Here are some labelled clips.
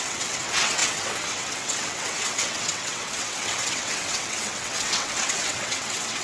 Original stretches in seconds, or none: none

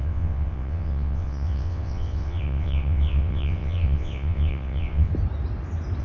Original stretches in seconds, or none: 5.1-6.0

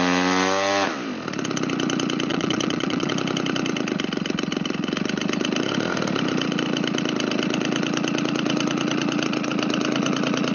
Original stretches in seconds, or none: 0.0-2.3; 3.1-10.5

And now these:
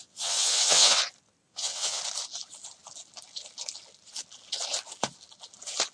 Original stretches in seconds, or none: 1.0-1.5; 2.0-5.9

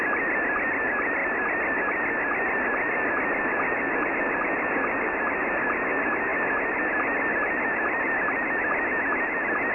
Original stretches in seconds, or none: 0.0-9.7